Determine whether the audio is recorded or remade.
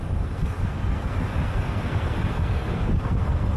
remade